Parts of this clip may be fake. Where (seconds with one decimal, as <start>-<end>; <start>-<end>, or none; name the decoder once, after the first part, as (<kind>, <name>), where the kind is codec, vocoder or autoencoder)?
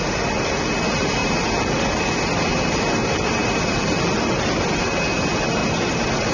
3.4-4.7 (vocoder, BigVGAN v2); 5.6-6.3